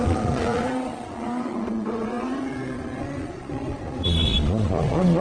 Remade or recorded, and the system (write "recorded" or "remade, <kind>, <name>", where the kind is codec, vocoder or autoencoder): remade, vocoder, Vocos